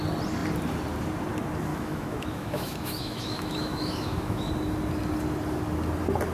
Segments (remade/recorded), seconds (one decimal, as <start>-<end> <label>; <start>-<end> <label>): 0.0-1.7 recorded; 1.7-4.5 remade; 4.5-6.3 recorded